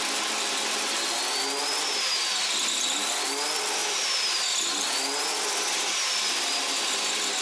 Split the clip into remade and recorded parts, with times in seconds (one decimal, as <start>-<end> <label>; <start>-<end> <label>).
0.0-7.4 recorded